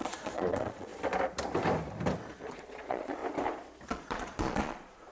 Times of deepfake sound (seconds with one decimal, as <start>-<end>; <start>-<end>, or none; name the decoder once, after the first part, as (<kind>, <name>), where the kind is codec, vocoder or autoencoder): 0.0-0.9 (vocoder, Vocos); 2.5-3.2; 3.9-5.1